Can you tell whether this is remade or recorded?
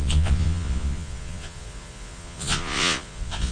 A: remade